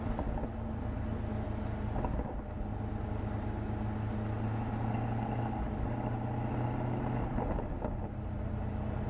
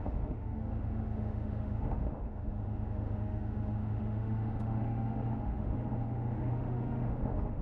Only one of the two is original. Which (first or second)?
first